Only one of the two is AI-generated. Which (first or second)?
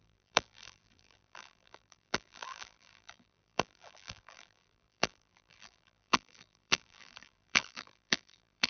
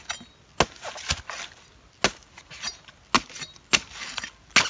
first